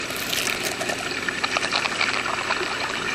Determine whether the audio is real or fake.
real